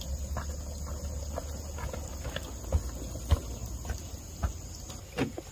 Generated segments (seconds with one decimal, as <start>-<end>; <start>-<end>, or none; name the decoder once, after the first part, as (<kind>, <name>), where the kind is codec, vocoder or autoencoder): 3.6-4.2 (vocoder, BigVGAN v2)